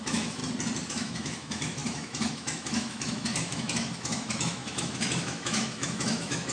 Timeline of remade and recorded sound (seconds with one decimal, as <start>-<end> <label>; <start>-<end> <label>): 0.0-0.4 remade; 0.4-0.9 recorded; 0.9-6.5 remade